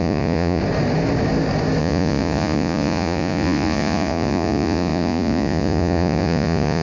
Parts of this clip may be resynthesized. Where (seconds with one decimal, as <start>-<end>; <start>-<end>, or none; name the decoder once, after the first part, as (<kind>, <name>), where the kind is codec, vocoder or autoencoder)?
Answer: 0.0-0.6 (vocoder, Vocos); 1.8-6.8